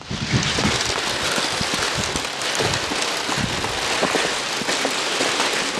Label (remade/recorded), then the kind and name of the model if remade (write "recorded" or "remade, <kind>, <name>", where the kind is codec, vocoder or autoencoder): recorded